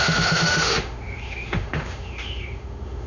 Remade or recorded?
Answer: remade